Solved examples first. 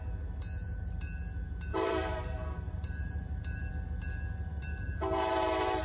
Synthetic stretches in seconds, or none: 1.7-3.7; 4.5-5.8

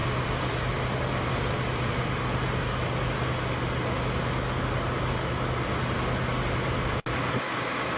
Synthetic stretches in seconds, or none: 0.0-2.2

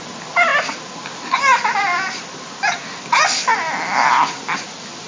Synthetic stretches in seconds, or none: none

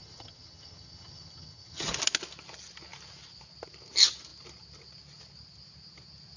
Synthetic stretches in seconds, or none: 0.0-1.9

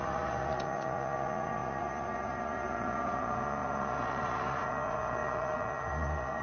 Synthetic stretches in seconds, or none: 0.0-6.4